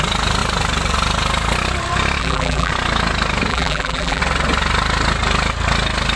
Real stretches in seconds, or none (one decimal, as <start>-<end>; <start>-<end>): 0.0-2.2; 2.7-3.5; 4.2-6.2